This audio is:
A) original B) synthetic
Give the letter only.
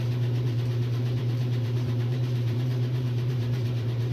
B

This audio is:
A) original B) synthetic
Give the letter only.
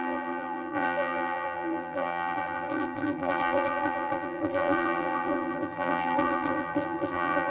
B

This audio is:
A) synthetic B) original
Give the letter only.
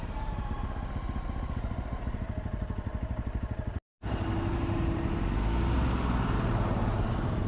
B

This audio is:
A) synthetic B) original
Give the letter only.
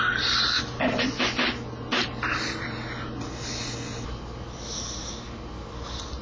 B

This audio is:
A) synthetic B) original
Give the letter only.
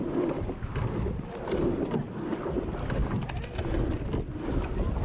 B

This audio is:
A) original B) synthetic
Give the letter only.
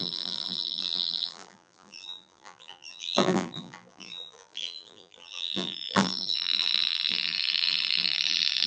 B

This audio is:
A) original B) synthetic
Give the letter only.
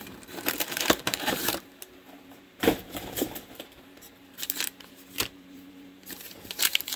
B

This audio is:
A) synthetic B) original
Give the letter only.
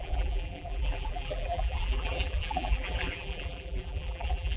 A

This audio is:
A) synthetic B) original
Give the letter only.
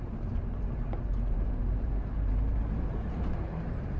A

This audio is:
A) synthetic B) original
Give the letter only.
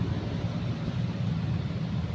A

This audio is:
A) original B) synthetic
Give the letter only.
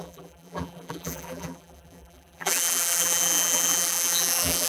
B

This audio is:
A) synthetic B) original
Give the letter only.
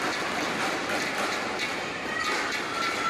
B